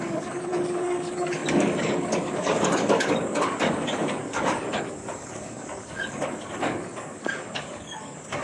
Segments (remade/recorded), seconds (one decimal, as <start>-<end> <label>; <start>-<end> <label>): 0.0-8.4 remade